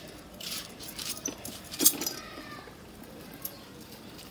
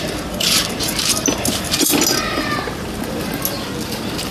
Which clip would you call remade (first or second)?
first